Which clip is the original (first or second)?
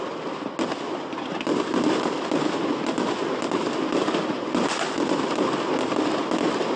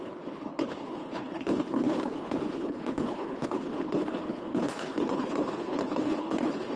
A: first